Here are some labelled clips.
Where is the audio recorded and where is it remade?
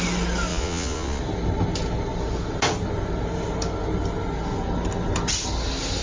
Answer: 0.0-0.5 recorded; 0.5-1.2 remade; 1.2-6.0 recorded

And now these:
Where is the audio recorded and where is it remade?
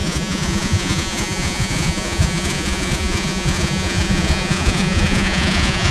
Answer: 0.0-5.9 remade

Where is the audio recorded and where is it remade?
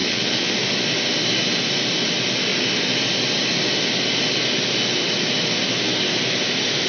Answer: 0.0-0.5 remade; 0.5-6.9 recorded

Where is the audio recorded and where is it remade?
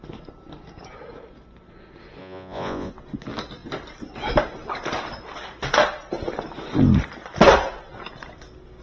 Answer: 0.0-2.2 recorded; 2.2-2.9 remade; 2.9-8.8 recorded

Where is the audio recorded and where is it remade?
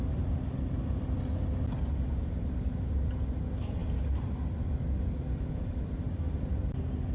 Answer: 0.0-7.1 recorded